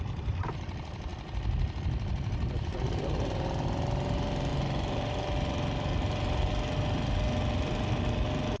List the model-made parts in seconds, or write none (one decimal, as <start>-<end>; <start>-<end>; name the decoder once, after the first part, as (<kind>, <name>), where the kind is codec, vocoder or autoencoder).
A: none